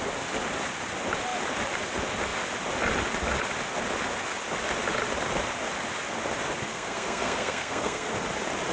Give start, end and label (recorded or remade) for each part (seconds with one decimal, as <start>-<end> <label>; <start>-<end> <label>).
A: 0.0-6.7 recorded; 6.7-8.1 remade; 8.1-8.7 recorded